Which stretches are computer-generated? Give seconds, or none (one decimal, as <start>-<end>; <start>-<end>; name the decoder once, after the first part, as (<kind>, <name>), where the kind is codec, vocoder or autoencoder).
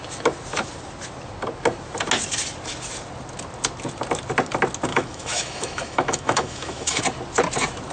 4.9-7.0 (autoencoder, DAC-VAE)